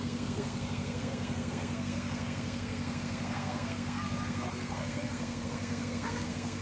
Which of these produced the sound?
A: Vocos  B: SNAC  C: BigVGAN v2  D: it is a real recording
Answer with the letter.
B